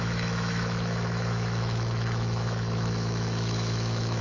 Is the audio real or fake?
fake